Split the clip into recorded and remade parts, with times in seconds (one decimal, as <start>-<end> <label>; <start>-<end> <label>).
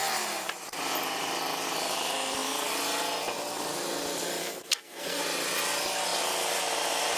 0.0-4.4 recorded; 4.4-5.2 remade; 5.2-7.2 recorded